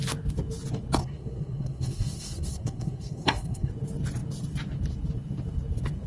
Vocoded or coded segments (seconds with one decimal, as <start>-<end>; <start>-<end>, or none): 1.0-3.7